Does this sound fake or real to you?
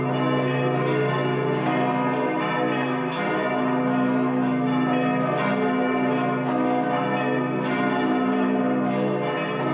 real